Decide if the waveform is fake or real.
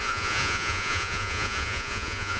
fake